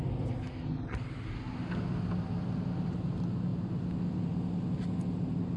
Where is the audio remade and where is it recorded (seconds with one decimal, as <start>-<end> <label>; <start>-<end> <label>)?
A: 0.0-5.6 recorded